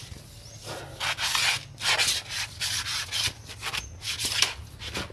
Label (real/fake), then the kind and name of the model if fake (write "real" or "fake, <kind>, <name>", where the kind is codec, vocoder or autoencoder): real